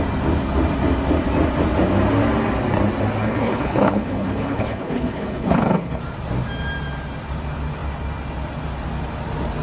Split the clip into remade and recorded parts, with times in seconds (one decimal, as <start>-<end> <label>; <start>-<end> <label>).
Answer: 0.0-3.2 recorded; 3.2-6.0 remade; 6.0-9.6 recorded